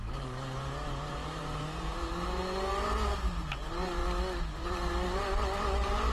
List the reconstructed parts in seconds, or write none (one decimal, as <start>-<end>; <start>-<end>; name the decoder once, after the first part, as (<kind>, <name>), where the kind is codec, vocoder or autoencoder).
0.0-4.0 (vocoder, BigVGAN v2); 4.6-6.1